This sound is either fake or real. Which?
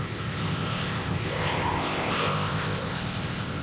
fake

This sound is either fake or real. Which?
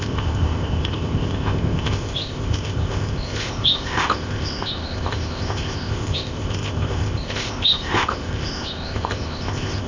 fake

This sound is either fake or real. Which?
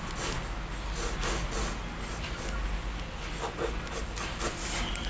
real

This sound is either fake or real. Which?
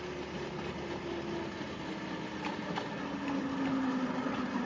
real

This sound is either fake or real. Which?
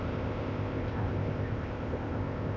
fake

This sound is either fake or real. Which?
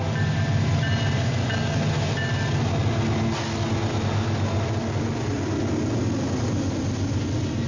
real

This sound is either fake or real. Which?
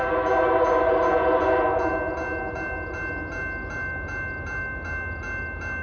real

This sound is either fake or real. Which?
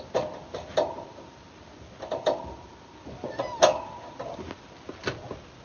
real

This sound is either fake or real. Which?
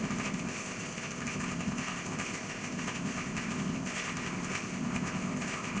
fake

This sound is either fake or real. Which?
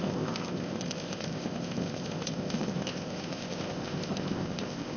fake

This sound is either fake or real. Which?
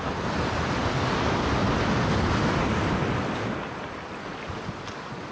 real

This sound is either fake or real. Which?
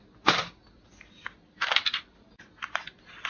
real